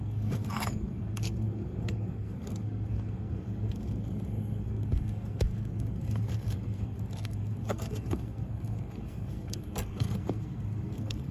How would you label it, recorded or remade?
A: remade